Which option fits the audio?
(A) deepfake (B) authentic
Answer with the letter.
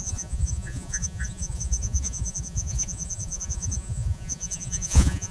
A